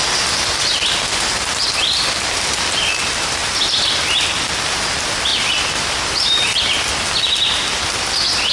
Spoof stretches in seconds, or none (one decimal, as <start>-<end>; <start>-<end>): none